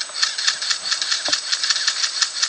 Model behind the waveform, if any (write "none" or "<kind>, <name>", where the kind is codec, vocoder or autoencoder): none